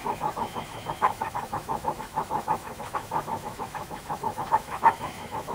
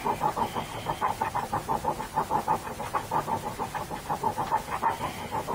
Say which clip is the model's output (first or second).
first